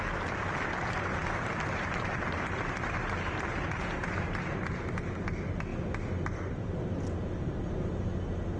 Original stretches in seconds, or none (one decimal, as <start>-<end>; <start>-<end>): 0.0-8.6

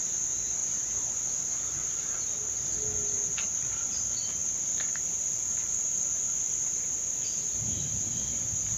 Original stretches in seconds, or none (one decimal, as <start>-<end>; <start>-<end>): 0.0-8.8

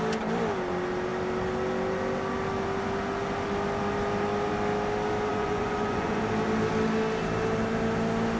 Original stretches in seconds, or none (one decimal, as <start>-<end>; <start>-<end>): 0.0-5.3; 6.2-8.4

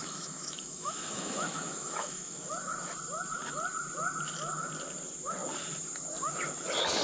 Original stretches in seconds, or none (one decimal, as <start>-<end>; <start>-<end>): 2.5-7.0

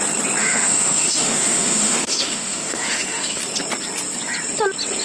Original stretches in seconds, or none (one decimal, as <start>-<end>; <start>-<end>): 0.0-0.4; 3.4-5.0

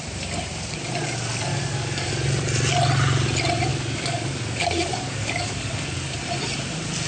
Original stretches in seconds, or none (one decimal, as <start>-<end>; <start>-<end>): 0.0-1.5; 2.1-3.7; 6.2-7.1

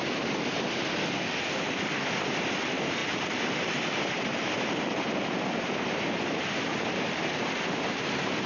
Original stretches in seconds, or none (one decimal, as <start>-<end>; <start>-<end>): none